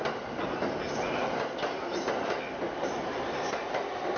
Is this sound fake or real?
real